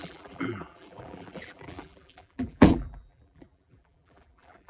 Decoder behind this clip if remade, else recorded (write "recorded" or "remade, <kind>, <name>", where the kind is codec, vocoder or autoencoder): remade, vocoder, BigVGAN v2